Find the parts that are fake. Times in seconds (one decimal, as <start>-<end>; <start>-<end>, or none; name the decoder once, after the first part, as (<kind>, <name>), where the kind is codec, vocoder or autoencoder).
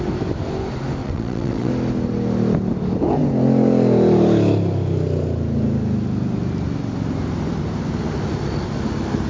1.0-1.7 (vocoder, WaveNeXt)